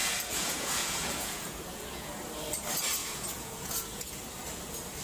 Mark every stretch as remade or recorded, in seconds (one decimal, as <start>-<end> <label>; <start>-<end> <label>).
0.0-2.1 remade; 2.1-3.0 recorded; 3.0-4.2 remade; 4.2-5.0 recorded